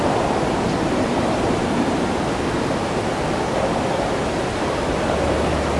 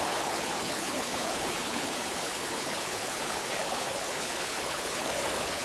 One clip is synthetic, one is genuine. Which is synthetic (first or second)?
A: second